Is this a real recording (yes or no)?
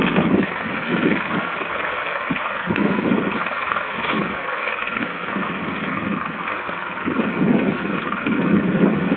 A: no